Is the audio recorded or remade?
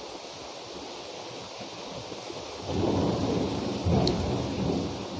recorded